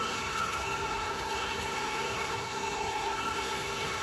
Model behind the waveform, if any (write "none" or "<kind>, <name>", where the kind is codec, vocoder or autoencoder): codec, SNAC